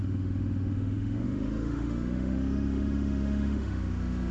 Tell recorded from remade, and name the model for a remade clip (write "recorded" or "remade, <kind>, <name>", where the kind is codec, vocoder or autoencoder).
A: remade, autoencoder, DAC-VAE